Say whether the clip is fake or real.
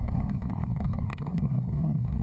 fake